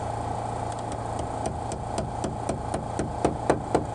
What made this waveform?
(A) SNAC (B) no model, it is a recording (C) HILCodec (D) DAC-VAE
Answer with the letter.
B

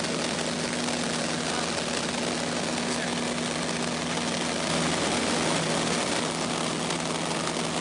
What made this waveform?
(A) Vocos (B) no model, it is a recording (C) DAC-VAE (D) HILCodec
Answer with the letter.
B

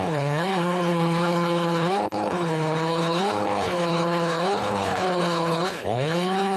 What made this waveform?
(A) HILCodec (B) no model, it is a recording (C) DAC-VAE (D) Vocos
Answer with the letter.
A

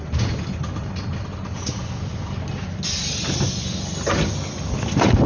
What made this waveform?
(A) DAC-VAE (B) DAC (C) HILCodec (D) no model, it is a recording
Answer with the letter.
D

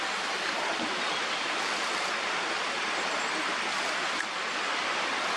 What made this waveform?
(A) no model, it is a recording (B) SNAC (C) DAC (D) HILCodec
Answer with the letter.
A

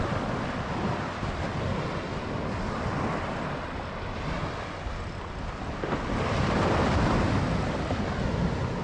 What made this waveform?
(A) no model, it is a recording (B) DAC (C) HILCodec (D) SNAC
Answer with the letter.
A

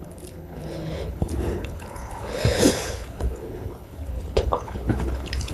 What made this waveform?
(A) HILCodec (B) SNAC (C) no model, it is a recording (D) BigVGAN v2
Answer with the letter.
A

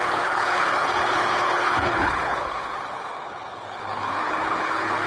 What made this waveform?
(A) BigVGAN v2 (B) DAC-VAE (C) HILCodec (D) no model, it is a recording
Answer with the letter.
C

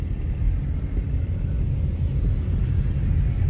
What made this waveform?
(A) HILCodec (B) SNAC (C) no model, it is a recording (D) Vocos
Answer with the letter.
C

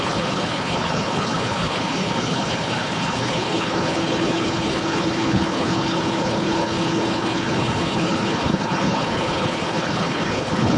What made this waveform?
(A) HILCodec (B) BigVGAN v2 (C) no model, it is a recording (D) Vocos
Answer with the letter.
A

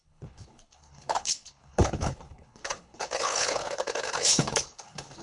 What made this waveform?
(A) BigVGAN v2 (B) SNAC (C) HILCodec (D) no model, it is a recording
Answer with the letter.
C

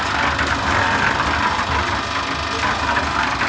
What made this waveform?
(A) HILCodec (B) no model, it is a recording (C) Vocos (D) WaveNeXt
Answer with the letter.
B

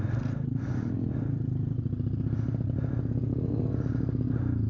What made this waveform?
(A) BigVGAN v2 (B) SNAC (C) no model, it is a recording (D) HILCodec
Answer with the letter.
C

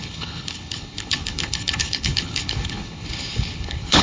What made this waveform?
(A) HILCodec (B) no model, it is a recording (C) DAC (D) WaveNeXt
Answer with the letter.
A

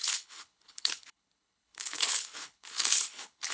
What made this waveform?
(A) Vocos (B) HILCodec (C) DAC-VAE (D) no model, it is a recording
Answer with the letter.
B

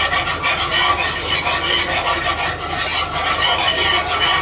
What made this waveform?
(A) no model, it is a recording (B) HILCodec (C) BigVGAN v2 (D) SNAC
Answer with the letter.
A